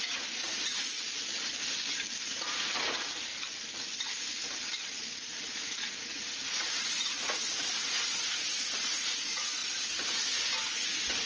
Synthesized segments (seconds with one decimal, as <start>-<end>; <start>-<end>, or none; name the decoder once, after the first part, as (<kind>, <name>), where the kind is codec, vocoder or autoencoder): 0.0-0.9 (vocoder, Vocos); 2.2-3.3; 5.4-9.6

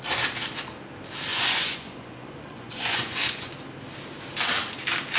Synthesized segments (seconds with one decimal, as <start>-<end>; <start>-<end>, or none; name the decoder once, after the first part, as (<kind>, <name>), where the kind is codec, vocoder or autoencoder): 1.3-3.5 (vocoder, Vocos)

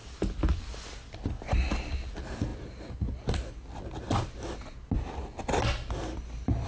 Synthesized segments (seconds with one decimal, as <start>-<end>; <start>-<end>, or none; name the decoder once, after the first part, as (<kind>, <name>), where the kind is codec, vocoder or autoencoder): none

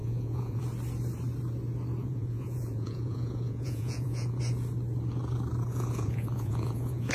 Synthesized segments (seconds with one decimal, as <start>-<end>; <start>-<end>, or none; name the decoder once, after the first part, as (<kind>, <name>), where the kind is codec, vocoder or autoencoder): 0.0-0.6 (vocoder, Vocos); 2.0-4.4; 5.7-7.1

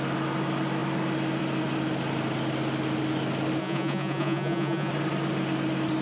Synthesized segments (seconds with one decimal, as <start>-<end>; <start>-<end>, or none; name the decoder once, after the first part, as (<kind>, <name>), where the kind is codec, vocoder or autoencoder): 3.6-4.9 (vocoder, Vocos)